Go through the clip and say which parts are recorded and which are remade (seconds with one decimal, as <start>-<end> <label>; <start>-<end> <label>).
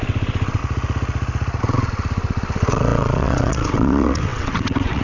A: 0.0-0.6 remade; 0.6-1.6 recorded; 1.6-5.0 remade